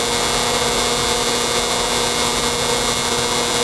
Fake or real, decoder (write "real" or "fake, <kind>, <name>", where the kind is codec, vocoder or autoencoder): real